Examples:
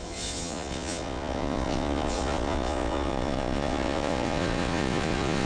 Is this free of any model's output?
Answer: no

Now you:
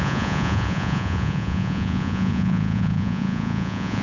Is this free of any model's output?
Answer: no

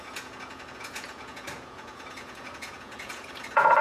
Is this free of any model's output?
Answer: no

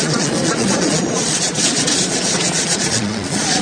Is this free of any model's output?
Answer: no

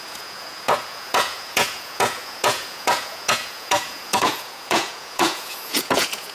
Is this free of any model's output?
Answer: no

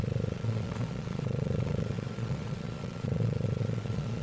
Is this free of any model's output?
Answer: no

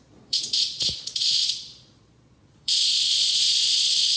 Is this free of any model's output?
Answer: no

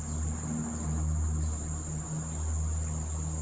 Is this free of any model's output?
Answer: yes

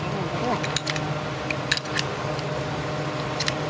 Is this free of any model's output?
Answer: yes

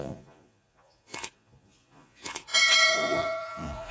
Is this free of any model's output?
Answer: no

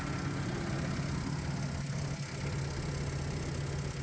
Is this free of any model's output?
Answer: yes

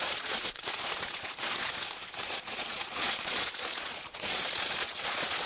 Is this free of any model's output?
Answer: no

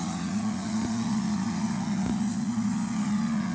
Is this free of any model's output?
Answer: no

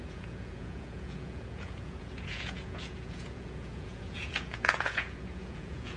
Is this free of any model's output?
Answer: no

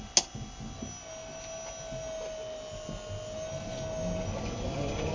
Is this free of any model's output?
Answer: yes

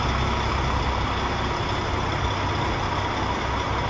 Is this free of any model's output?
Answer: yes